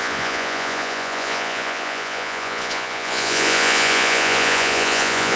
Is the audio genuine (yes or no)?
no